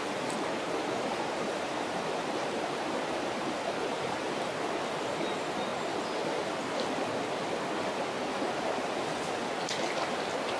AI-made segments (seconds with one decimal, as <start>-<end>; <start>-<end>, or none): 1.1-4.5; 8.3-10.2

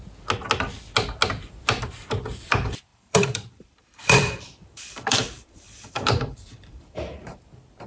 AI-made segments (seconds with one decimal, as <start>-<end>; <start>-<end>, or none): 2.9-7.4

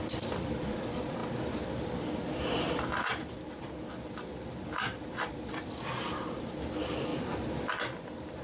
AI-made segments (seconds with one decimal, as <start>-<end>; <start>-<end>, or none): 0.0-7.1; 7.7-8.4

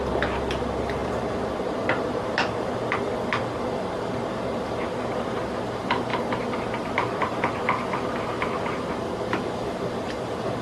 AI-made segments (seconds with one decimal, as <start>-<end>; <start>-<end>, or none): none

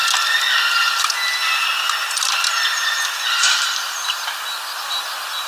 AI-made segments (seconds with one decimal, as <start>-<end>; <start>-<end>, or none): 2.7-4.2

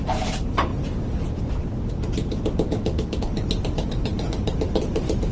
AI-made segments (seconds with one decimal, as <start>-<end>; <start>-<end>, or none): 0.0-0.7; 3.2-5.3

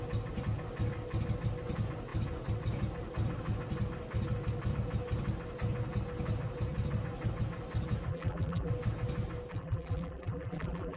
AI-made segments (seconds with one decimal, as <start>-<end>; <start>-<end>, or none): 8.1-8.7; 9.5-11.0